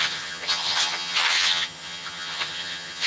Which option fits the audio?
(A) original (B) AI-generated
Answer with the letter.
B